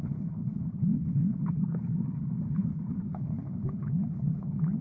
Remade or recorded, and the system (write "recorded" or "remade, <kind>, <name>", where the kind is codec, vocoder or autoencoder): remade, codec, HILCodec